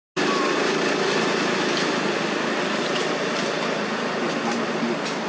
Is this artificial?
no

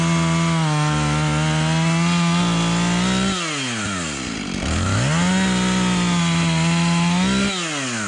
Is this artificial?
no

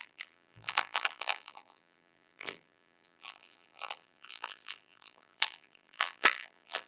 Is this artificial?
yes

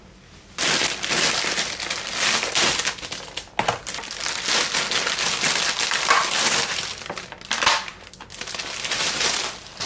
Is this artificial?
no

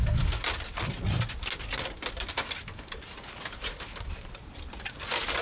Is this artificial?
no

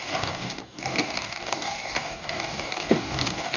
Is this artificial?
yes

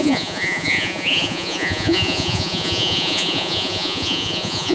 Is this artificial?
yes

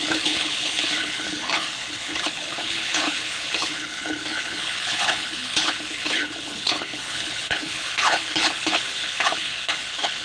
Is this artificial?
yes